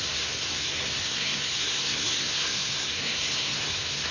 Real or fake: fake